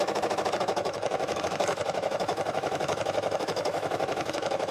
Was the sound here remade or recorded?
remade